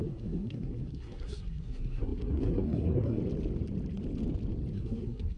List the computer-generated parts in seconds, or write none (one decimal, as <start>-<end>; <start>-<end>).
0.0-3.2; 4.7-5.4